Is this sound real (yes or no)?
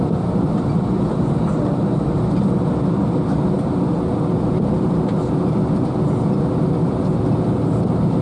yes